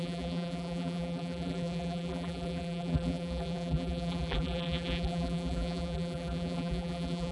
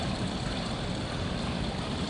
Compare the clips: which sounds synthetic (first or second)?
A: first